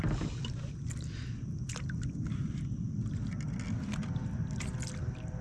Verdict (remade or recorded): recorded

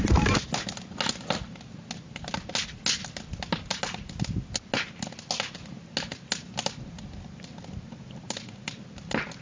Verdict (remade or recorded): recorded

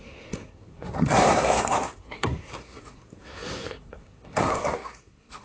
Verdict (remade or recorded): remade